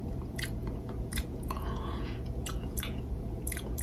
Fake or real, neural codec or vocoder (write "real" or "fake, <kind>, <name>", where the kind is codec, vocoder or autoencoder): fake, vocoder, Vocos